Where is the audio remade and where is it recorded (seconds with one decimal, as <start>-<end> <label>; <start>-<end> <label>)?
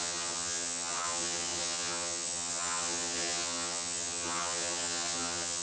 0.0-5.6 remade